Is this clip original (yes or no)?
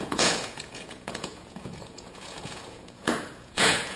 no